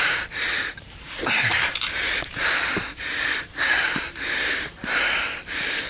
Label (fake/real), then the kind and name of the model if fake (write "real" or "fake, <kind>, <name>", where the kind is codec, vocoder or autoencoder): fake, vocoder, BigVGAN v2